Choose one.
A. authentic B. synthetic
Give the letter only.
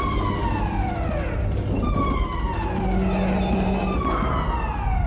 A